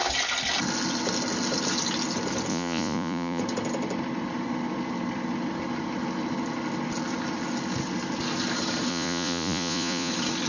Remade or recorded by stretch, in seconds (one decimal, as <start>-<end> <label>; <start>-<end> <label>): 0.0-2.5 recorded; 2.5-3.4 remade; 3.4-8.9 recorded; 8.9-10.1 remade; 10.1-10.5 recorded